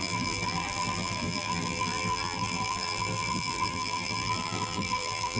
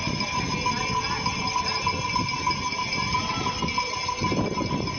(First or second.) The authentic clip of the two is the second